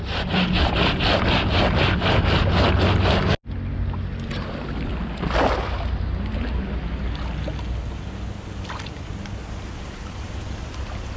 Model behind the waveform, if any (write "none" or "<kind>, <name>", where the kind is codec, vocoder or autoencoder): none